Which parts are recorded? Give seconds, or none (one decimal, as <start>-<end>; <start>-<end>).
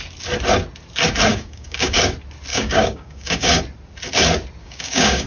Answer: 0.0-1.3; 2.0-2.5; 3.6-4.6